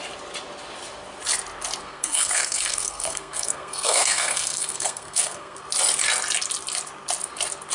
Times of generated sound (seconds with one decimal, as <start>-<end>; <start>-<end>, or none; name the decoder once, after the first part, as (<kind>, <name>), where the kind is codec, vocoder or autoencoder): 1.8-5.6 (codec, SNAC)